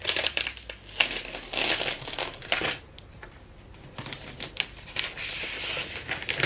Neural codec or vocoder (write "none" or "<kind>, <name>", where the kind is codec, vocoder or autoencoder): none